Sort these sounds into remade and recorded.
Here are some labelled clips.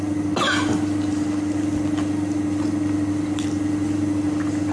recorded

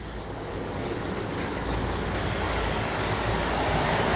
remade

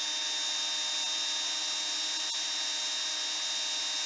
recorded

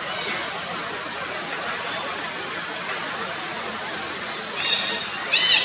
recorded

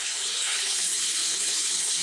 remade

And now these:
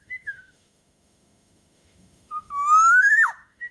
remade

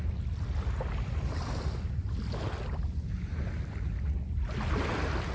recorded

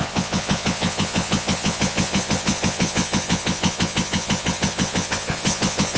remade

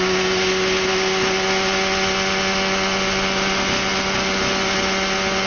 recorded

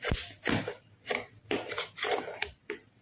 recorded